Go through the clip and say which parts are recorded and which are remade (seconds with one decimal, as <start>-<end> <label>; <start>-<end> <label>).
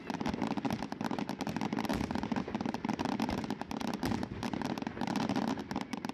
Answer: 0.0-6.1 recorded